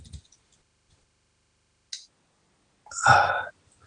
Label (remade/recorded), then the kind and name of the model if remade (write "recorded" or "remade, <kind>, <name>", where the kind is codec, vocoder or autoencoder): recorded